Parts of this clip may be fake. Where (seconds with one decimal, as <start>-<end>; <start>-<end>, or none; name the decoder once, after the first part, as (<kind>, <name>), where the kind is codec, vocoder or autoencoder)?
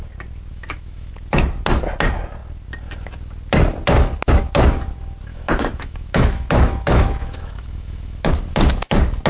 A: 0.5-1.1 (autoencoder, DAC-VAE); 5.3-8.3